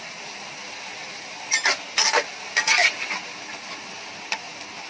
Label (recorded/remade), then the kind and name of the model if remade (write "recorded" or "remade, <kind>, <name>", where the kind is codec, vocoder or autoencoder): recorded